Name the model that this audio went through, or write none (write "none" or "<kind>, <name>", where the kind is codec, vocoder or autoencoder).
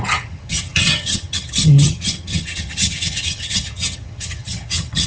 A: vocoder, HiFi-GAN